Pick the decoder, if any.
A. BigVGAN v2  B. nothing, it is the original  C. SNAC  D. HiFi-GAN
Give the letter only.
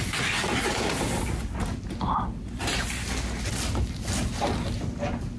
B